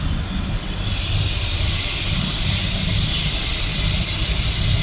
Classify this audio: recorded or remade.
recorded